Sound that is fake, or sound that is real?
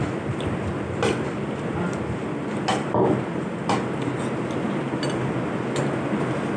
real